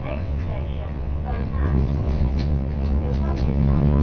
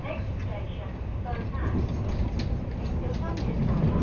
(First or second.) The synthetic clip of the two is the first